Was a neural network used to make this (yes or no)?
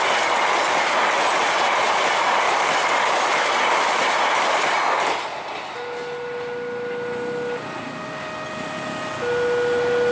no